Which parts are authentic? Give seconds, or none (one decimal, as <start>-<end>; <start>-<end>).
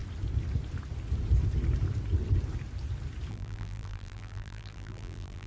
0.0-3.3